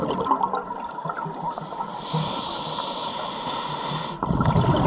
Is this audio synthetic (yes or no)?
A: no